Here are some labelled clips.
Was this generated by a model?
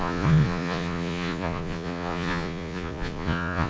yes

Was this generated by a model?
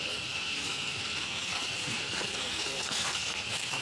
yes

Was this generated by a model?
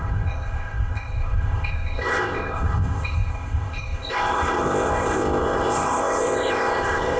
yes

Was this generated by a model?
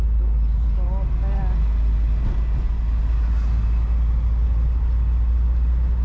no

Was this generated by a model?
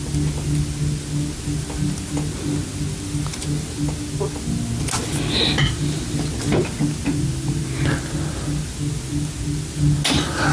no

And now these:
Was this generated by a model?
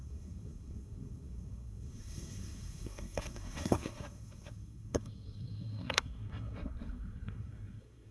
yes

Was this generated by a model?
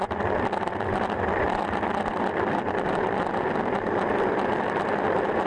no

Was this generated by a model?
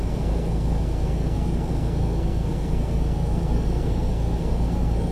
yes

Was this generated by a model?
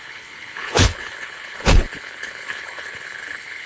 yes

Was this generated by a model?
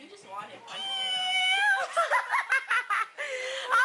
no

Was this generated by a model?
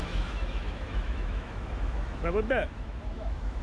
yes